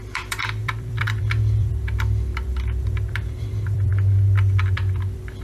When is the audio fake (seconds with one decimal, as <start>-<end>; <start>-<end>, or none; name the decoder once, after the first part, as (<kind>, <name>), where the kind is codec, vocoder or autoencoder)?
0.0-3.9 (vocoder, BigVGAN v2); 4.6-5.4